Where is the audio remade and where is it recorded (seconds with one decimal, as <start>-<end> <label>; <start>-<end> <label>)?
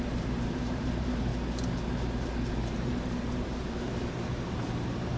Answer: 0.0-1.3 remade; 1.3-2.5 recorded; 2.5-5.2 remade